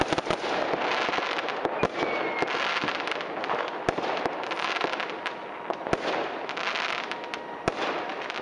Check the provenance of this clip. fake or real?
real